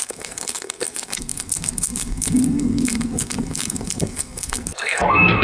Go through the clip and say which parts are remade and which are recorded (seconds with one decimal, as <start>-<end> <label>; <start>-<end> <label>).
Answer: 0.0-5.4 remade